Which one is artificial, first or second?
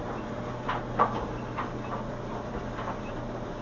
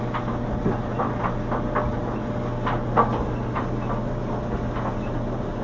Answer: first